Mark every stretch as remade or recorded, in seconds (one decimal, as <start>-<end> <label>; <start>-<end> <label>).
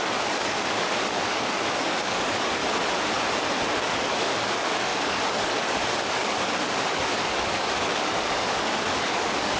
0.0-2.6 remade; 2.6-3.8 recorded; 3.8-9.6 remade